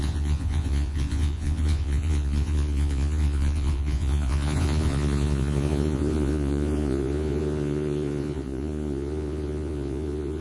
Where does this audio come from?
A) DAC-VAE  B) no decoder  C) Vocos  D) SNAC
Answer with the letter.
C